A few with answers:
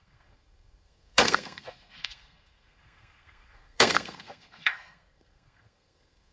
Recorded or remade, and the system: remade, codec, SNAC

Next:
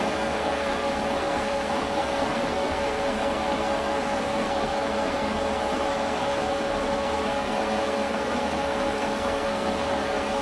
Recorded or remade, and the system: remade, codec, SNAC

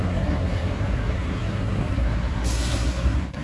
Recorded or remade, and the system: remade, codec, SNAC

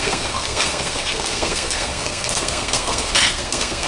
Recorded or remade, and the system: remade, codec, SNAC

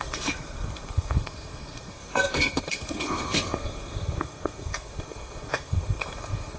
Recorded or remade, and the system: remade, codec, SNAC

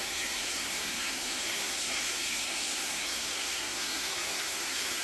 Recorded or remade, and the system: remade, codec, SNAC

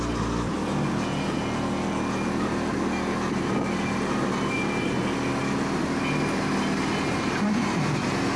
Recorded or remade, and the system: recorded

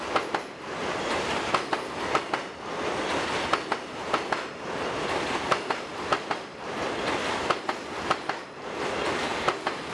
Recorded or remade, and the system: recorded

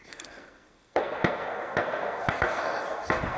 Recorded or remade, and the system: remade, codec, SNAC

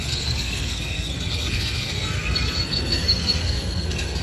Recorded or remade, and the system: remade, codec, SNAC